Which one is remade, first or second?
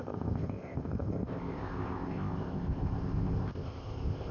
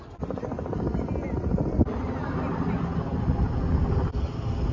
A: first